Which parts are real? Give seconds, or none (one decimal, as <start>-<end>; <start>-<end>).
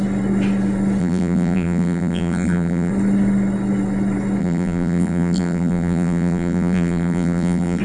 0.0-1.0; 2.9-4.4